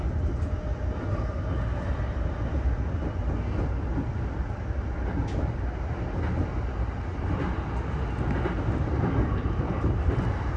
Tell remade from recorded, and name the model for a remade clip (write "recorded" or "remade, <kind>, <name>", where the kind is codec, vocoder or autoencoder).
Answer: recorded